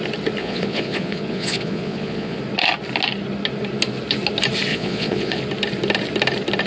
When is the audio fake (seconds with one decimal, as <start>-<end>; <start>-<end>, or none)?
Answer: 0.4-2.4; 4.7-5.4